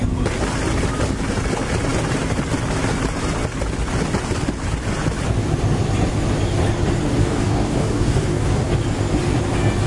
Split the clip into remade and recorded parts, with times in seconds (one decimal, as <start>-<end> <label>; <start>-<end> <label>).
0.0-7.2 recorded; 7.2-8.7 remade; 8.7-9.9 recorded